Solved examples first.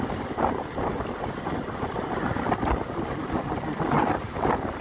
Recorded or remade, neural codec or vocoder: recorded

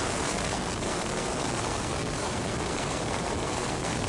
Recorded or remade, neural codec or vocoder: remade, codec, SNAC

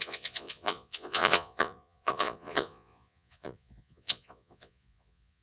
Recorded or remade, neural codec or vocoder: remade, vocoder, Vocos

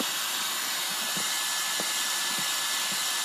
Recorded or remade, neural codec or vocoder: recorded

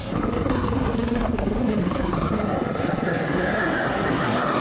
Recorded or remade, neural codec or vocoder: remade, codec, SNAC